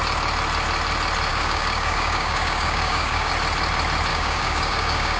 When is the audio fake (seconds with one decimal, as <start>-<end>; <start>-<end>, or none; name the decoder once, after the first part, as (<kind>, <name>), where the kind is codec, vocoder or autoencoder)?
1.3-3.3 (codec, DAC); 4.1-5.2